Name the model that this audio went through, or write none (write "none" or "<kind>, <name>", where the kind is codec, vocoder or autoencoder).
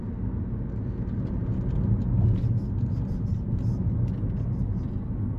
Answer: none